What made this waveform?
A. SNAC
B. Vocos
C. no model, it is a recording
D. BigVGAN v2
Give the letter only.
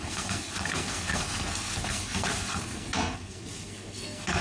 A